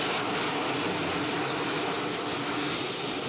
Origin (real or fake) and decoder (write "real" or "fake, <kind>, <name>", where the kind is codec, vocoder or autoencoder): real